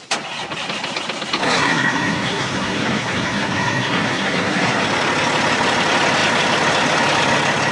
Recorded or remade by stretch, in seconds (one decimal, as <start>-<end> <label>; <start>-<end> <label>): 0.0-1.4 recorded; 1.4-4.8 remade; 4.8-7.7 recorded